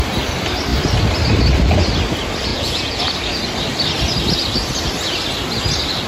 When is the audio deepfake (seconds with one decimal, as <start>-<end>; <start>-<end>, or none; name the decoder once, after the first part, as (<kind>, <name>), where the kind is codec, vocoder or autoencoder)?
2.5-3.0 (vocoder, Vocos)

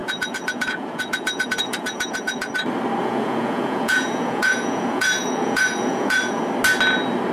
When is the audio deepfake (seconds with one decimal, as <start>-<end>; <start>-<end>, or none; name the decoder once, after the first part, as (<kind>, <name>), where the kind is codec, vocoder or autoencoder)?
0.0-2.5 (vocoder, Vocos); 3.0-6.4

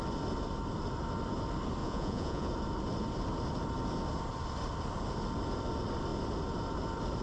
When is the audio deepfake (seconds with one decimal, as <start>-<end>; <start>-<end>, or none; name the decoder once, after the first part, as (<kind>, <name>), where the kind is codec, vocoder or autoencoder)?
1.8-2.5 (vocoder, Vocos)

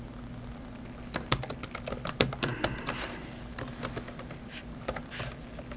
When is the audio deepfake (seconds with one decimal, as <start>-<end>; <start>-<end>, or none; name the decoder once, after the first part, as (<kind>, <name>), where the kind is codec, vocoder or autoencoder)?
none

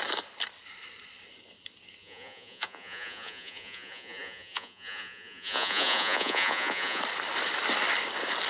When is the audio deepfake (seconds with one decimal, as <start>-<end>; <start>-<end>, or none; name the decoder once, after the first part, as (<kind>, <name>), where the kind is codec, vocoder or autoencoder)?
2.0-7.0 (vocoder, Vocos)

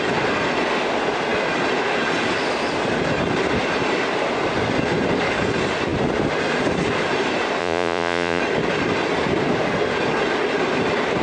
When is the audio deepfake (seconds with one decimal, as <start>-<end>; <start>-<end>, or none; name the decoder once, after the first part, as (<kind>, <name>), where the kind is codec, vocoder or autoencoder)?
7.6-8.4 (vocoder, Vocos)

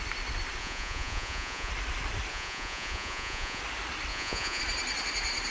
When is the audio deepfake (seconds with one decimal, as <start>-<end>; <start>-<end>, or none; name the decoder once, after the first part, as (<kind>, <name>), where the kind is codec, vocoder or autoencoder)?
0.6-1.7 (vocoder, Vocos); 2.3-3.6; 4.1-4.6

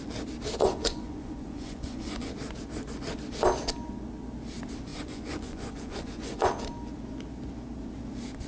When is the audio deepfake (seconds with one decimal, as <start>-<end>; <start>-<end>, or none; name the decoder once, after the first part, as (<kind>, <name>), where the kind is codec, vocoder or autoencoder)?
0.6-2.3 (vocoder, Vocos); 4.9-6.6